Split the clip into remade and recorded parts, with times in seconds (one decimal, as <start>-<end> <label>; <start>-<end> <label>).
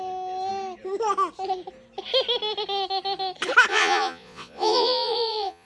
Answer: 0.0-3.7 recorded; 3.7-5.7 remade